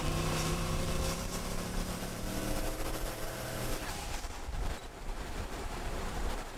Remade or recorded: remade